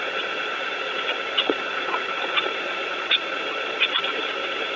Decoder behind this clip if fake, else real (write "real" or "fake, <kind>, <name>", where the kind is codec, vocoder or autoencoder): fake, vocoder, Vocos